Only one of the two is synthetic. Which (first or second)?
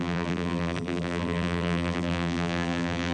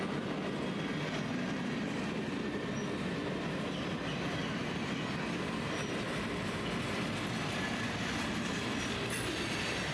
first